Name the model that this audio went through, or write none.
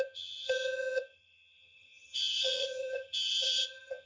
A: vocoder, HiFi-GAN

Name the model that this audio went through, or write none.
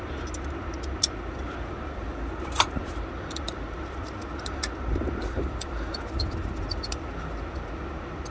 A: none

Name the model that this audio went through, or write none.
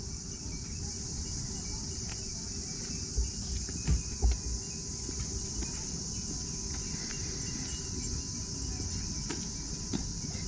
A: none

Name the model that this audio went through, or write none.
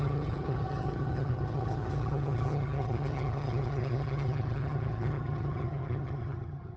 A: vocoder, HiFi-GAN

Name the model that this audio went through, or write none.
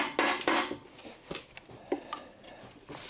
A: none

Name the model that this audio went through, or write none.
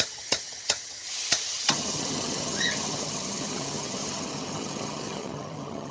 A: vocoder, HiFi-GAN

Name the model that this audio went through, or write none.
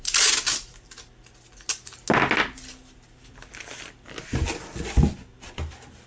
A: none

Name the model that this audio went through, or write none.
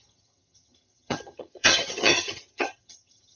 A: vocoder, HiFi-GAN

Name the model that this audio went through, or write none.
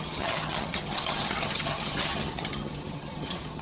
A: vocoder, HiFi-GAN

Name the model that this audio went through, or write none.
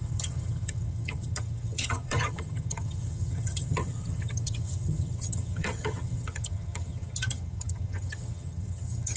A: vocoder, HiFi-GAN